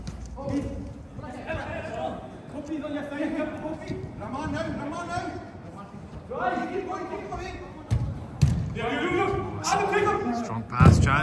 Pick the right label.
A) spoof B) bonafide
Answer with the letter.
B